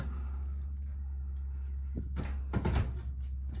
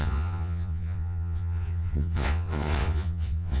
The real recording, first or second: first